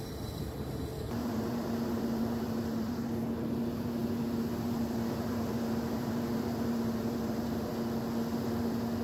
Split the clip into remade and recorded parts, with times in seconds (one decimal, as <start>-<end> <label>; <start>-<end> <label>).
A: 0.0-7.7 remade; 7.7-8.6 recorded; 8.6-9.0 remade